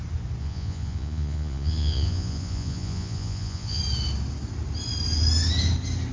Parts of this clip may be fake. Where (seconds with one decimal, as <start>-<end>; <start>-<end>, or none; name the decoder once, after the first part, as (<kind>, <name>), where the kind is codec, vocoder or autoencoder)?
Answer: 0.4-3.8 (vocoder, Vocos)